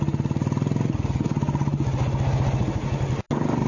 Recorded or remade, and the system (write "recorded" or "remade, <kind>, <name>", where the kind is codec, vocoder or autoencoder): recorded